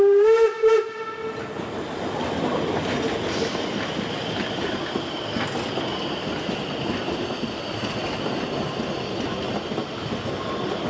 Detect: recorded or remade recorded